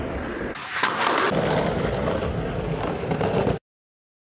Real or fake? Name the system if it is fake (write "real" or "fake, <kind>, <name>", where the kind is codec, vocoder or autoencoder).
real